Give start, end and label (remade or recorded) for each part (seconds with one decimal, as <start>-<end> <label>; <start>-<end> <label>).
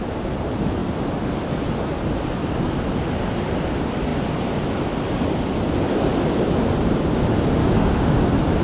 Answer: 0.0-7.6 recorded; 7.6-8.2 remade; 8.2-8.6 recorded